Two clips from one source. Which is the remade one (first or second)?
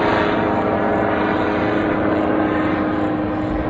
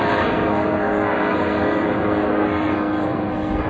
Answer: second